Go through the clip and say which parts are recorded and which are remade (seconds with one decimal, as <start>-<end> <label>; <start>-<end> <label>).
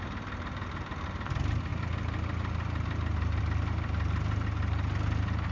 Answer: 0.0-5.5 recorded